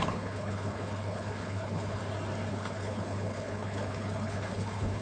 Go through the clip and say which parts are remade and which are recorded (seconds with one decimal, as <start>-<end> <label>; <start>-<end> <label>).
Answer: 0.0-2.0 remade; 2.0-2.5 recorded; 2.5-5.0 remade